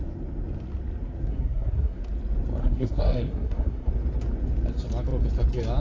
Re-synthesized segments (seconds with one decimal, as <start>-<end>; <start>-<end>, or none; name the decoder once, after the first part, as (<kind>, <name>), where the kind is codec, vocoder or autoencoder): 1.3-2.0 (codec, SNAC); 2.6-3.9